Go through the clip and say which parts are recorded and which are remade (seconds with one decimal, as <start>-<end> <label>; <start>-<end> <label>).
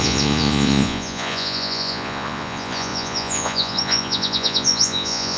0.0-5.4 remade